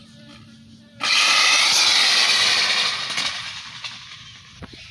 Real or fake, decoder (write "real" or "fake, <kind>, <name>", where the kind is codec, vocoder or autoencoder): real